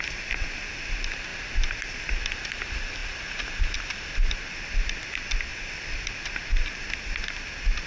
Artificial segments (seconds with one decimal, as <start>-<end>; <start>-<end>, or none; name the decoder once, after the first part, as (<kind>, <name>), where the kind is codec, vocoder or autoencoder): none